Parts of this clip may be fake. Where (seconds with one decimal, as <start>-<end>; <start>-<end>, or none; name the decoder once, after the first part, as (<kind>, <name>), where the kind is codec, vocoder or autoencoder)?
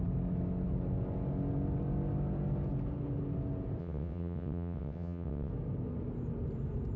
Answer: 3.8-5.5 (vocoder, WaveNeXt)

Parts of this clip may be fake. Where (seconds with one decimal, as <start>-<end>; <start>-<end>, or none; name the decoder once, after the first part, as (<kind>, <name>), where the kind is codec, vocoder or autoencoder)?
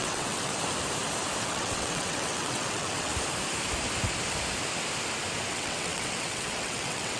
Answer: 0.0-0.5 (vocoder, WaveNeXt); 1.4-3.1; 5.5-7.2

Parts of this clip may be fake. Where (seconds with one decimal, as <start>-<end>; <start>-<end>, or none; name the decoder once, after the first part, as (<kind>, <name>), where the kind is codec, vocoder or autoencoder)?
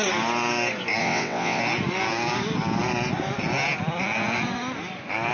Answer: 1.0-1.6 (vocoder, WaveNeXt)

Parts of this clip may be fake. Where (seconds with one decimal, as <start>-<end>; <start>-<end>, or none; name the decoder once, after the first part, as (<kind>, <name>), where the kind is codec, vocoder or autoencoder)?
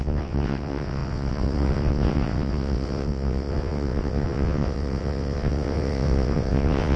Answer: 0.0-7.0 (vocoder, WaveNeXt)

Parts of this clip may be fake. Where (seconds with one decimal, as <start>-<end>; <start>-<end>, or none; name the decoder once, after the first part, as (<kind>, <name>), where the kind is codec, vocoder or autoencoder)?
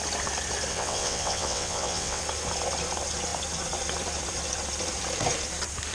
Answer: 0.7-2.2 (vocoder, WaveNeXt)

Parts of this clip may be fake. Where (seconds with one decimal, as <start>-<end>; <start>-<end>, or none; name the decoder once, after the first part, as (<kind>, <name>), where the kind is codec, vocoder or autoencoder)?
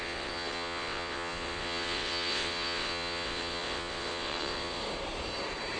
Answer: 0.0-4.8 (vocoder, WaveNeXt)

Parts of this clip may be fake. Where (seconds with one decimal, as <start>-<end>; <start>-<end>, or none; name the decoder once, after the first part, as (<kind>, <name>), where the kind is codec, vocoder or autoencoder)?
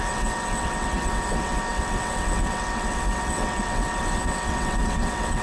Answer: 0.0-5.4 (vocoder, WaveNeXt)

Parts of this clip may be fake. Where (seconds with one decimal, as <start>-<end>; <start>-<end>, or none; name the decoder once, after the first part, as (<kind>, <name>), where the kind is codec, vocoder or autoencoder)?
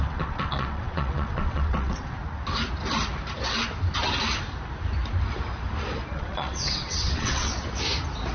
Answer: 0.0-2.2 (vocoder, WaveNeXt); 6.1-7.5